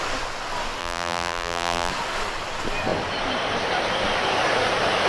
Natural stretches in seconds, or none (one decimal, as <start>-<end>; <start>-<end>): 0.0-0.8; 1.9-5.1